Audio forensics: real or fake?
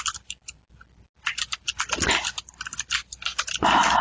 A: real